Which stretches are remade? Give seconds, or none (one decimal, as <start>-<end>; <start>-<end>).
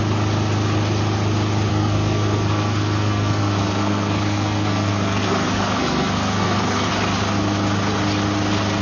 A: 1.7-6.9